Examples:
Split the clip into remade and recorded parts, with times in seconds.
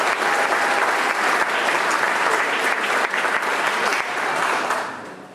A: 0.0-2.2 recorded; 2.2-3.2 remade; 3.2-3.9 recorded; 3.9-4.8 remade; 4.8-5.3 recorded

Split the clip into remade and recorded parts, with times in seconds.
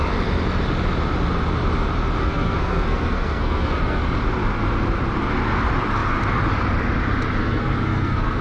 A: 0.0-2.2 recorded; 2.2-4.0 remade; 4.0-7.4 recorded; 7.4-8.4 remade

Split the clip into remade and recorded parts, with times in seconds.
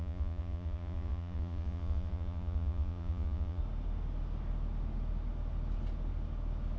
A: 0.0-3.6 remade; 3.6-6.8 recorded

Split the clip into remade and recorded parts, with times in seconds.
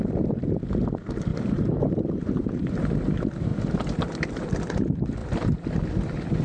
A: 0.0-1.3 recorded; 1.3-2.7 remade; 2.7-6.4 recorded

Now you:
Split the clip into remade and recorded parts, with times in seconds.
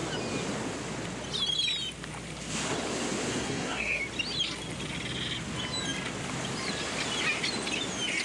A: 0.0-3.3 recorded; 3.3-4.0 remade; 4.0-8.2 recorded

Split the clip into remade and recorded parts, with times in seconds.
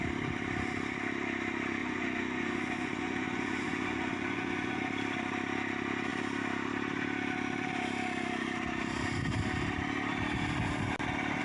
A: 0.0-1.8 recorded; 1.8-4.8 remade; 4.8-11.4 recorded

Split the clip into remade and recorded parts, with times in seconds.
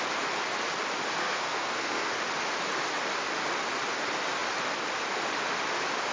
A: 0.0-1.2 recorded; 1.2-2.1 remade; 2.1-6.1 recorded